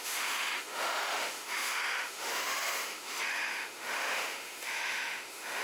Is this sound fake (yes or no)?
yes